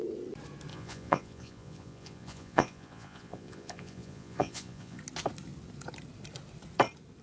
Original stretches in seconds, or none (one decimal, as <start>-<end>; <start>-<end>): 0.0-0.7; 5.0-7.2